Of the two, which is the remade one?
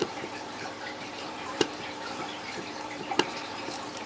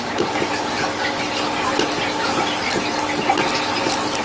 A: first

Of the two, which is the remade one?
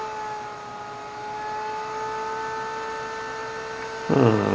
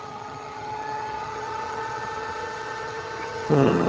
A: second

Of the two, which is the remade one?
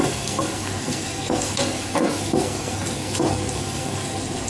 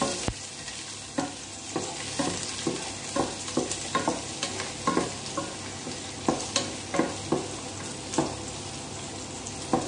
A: first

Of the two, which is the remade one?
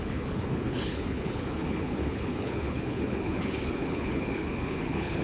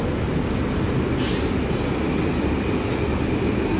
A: first